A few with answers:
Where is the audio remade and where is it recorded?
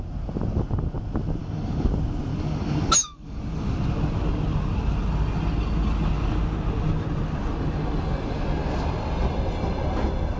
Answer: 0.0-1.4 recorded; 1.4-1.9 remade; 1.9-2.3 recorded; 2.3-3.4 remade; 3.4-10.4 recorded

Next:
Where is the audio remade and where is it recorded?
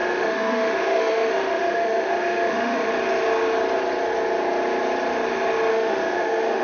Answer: 0.0-2.9 remade; 2.9-5.7 recorded; 5.7-6.6 remade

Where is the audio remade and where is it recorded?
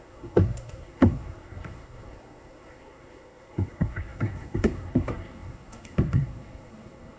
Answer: 0.0-7.2 remade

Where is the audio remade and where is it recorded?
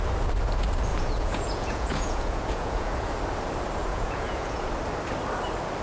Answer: 0.0-0.9 recorded; 0.9-3.1 remade; 3.1-3.8 recorded; 3.8-4.7 remade; 4.7-5.8 recorded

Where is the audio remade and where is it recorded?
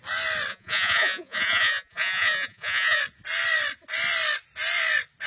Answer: 0.0-0.5 recorded; 0.5-3.0 remade; 3.0-5.3 recorded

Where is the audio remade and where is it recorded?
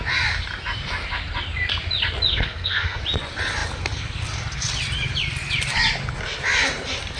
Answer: 0.0-2.3 recorded; 2.3-3.0 remade; 3.0-7.2 recorded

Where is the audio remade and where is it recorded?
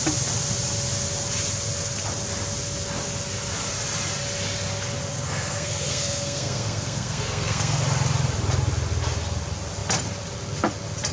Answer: 0.0-5.1 recorded; 5.1-7.8 remade; 7.8-11.1 recorded